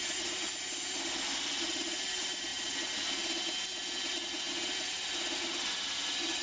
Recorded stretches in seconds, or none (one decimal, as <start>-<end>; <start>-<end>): 0.0-6.4